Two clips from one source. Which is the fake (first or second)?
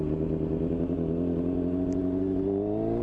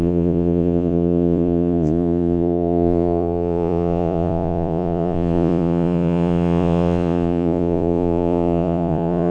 second